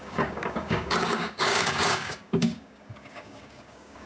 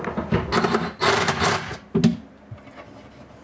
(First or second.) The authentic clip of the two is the second